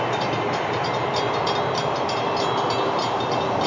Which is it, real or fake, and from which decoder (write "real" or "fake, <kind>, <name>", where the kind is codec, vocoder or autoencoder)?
fake, vocoder, BigVGAN v2